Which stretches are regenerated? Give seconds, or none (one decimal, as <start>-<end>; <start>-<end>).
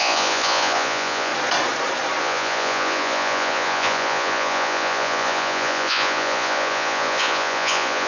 0.0-1.3; 2.2-8.1